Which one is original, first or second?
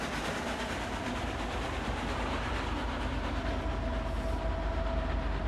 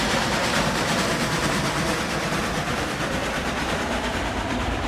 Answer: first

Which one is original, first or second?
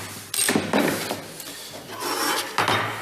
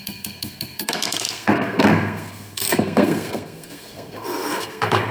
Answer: first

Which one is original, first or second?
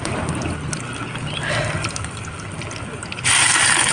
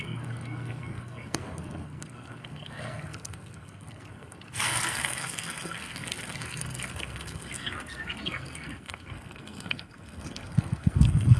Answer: first